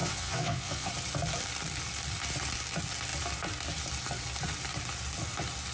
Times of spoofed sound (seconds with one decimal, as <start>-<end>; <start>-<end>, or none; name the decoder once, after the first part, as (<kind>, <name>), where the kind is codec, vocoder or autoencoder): 0.0-0.9 (vocoder, WaveNeXt)